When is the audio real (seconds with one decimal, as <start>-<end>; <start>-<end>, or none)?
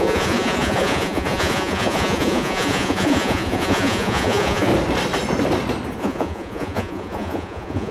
4.7-6.0